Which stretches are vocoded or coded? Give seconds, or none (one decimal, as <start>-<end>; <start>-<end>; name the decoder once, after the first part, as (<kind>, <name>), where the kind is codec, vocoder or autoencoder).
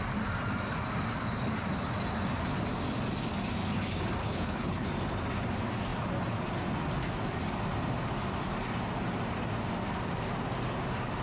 4.2-4.9 (codec, HILCodec)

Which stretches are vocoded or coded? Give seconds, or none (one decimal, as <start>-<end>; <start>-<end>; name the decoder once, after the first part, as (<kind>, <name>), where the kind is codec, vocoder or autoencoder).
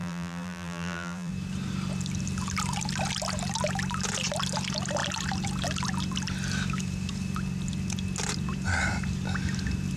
0.0-1.3 (vocoder, BigVGAN v2)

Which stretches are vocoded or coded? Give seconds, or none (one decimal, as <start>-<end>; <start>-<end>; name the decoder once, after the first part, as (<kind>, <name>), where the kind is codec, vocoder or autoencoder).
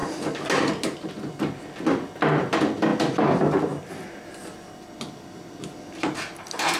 none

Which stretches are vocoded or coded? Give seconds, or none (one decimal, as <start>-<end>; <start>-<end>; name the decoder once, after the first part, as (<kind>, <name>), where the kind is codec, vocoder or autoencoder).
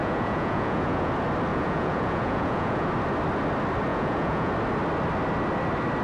0.0-1.1 (vocoder, Vocos); 1.5-2.9; 3.9-4.5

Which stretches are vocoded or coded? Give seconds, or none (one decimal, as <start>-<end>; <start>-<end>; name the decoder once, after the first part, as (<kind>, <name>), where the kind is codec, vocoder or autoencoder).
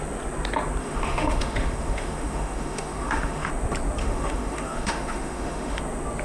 0.8-3.5 (autoencoder, DAC-VAE); 4.0-5.8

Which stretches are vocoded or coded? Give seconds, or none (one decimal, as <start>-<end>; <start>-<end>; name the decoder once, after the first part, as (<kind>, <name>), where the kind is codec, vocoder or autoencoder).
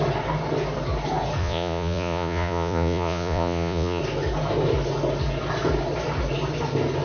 1.4-4.0 (vocoder, Vocos)